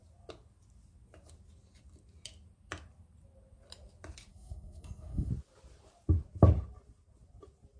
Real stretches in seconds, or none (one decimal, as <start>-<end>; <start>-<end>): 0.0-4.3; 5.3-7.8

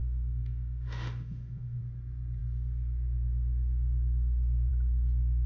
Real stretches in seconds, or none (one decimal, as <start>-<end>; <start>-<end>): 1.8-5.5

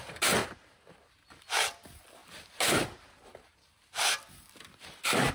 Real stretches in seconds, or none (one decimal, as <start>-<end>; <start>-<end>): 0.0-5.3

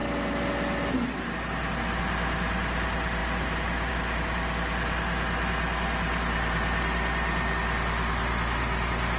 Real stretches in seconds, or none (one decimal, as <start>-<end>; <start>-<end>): 0.0-9.2